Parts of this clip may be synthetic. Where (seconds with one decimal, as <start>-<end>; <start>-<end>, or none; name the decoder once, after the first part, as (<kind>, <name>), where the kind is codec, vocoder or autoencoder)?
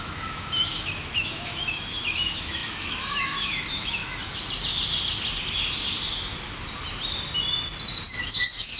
0.0-4.4 (autoencoder, DAC-VAE); 8.2-8.8